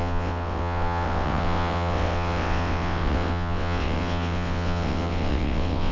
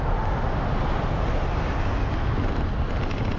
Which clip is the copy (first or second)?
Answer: first